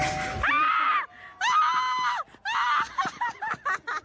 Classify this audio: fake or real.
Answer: real